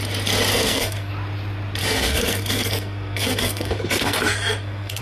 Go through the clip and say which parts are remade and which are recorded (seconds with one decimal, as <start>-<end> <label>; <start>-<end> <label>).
0.0-0.5 recorded; 0.5-1.1 remade; 1.1-1.8 recorded; 1.8-5.0 remade